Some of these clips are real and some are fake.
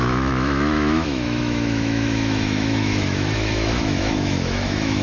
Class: fake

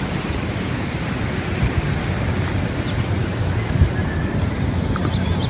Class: real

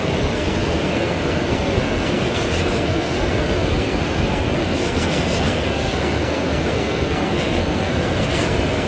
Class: fake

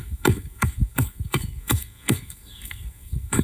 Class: fake